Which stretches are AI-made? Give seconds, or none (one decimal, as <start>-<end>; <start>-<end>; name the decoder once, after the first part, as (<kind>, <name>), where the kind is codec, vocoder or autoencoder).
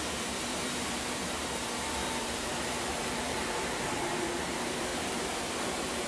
0.5-1.5 (vocoder, BigVGAN v2); 2.0-4.4; 4.9-5.5